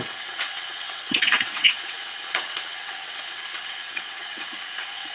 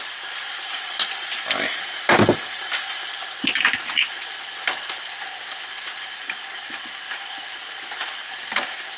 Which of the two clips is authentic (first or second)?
second